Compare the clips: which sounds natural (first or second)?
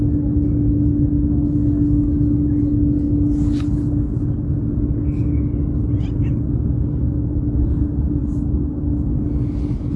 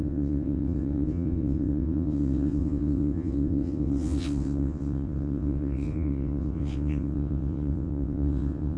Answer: first